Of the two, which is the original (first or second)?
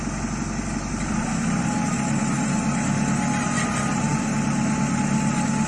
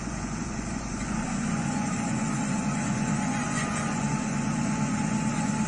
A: first